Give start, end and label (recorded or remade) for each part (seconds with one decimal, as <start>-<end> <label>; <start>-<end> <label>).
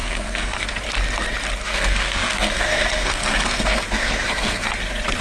0.0-0.7 remade; 0.7-1.6 recorded; 1.6-4.7 remade; 4.7-5.2 recorded